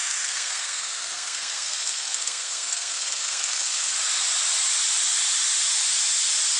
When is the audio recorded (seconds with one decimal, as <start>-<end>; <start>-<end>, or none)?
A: 3.9-6.6

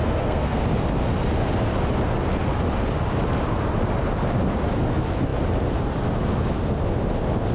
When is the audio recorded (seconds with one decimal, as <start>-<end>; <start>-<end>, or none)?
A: 0.6-7.5

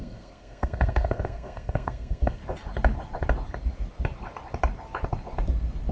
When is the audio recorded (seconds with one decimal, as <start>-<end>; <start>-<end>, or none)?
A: 2.4-5.9

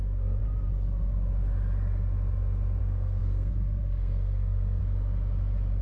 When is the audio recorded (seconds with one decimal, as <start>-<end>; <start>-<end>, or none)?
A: 0.4-2.8; 4.8-5.8

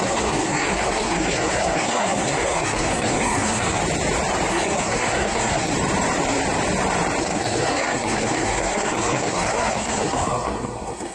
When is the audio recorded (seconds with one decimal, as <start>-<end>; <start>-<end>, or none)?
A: 3.8-4.5; 5.7-7.2

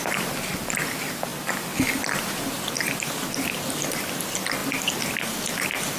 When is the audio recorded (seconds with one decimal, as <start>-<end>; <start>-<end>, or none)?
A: 0.0-6.0

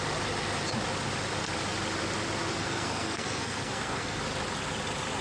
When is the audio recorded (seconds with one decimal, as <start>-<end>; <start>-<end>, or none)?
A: 0.0-2.6; 4.2-5.2

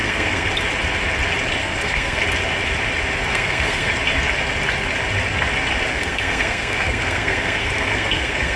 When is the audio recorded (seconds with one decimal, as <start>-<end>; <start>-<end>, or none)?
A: 0.5-1.6; 2.2-3.3; 3.9-5.9